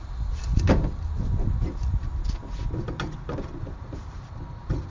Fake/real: real